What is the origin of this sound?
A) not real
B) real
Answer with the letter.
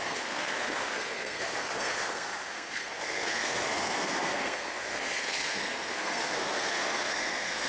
A